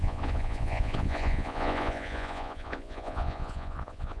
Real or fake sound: fake